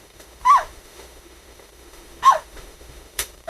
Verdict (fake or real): fake